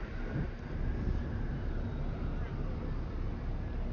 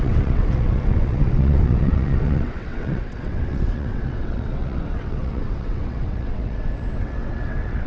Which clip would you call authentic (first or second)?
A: first